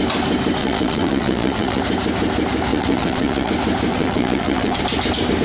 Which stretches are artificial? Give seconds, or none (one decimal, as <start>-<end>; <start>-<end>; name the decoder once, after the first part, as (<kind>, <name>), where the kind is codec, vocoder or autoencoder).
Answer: 0.6-1.8 (vocoder, WaveNeXt); 2.7-3.5; 3.9-4.8